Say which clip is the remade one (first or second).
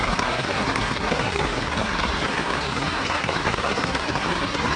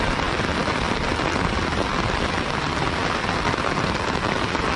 first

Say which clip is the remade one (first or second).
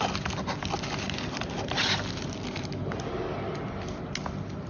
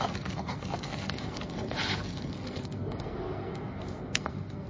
second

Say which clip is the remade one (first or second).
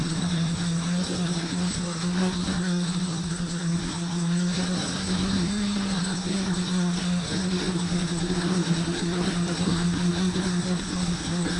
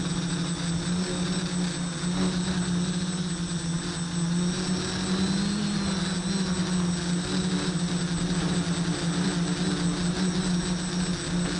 first